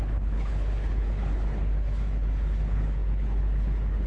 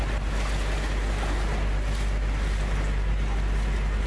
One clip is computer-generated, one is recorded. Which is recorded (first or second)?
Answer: second